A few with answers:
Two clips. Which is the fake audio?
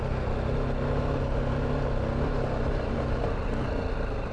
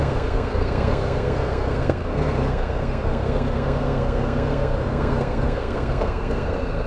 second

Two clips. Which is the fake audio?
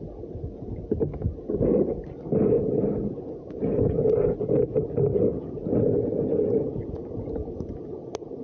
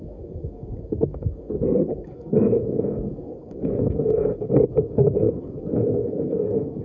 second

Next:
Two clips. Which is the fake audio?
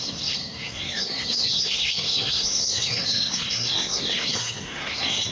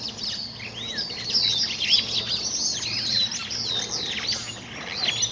first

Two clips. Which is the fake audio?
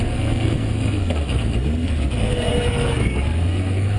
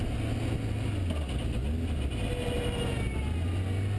first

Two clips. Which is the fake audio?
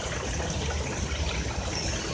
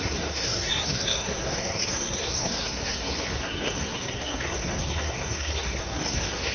second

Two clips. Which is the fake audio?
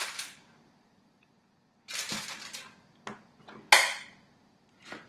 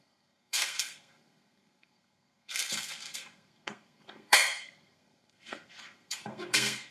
second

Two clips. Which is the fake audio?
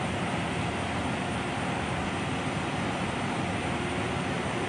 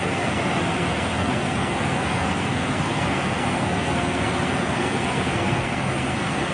second